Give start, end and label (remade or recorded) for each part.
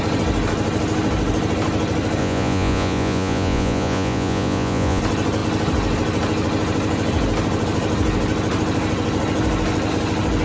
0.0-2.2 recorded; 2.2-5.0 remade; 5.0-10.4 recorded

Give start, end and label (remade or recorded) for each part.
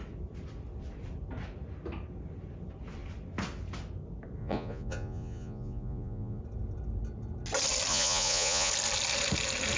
0.0-4.4 recorded; 4.4-6.4 remade; 6.4-7.9 recorded; 7.9-8.7 remade; 8.7-9.8 recorded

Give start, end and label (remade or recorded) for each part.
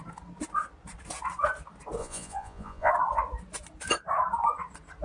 0.0-2.0 recorded; 2.0-2.9 remade; 2.9-5.0 recorded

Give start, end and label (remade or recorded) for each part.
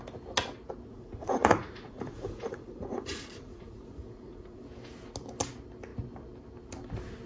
0.0-0.9 recorded; 0.9-4.6 remade; 4.6-7.3 recorded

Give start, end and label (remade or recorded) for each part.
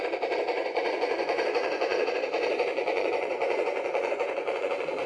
0.0-0.6 recorded; 0.6-2.1 remade; 2.1-2.7 recorded; 2.7-5.1 remade